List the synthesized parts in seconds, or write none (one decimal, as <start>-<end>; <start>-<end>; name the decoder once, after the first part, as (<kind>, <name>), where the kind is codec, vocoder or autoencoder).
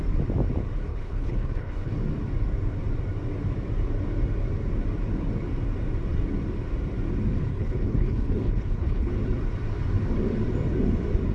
0.9-1.9 (codec, HILCodec); 7.5-9.1